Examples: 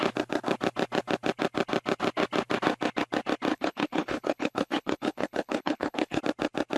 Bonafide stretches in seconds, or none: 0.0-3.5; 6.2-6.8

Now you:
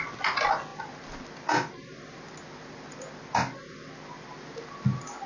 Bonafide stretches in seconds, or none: 0.0-5.3

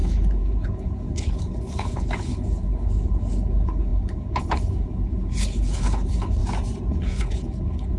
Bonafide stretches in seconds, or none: 6.4-6.9